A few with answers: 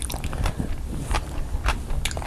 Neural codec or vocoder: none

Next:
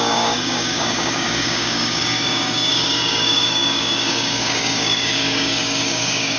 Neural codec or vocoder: codec, DAC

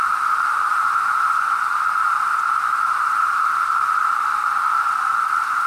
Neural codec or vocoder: vocoder, BigVGAN v2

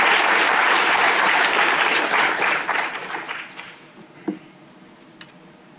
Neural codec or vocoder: vocoder, BigVGAN v2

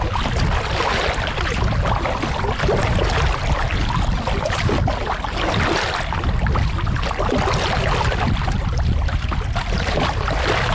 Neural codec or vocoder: none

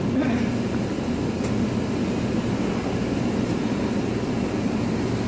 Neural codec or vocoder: none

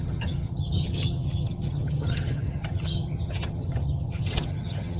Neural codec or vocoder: vocoder, HiFi-GAN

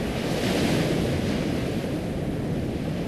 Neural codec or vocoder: none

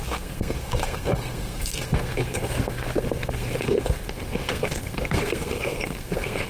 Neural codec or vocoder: codec, SNAC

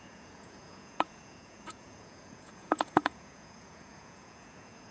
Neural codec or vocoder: vocoder, Vocos